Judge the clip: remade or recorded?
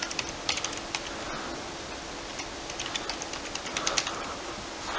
recorded